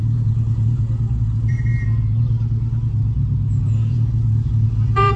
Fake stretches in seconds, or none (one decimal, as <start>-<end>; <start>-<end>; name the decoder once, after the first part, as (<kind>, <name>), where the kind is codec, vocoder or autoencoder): 0.0-1.7 (vocoder, Vocos); 3.6-5.2